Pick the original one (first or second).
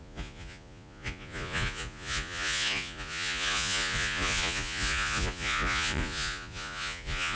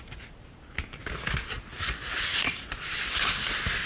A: second